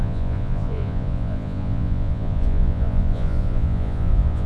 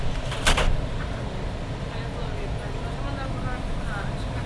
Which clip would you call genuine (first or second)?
second